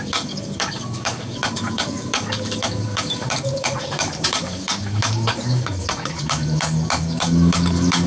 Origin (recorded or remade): remade